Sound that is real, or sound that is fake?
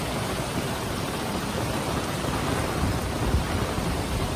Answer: real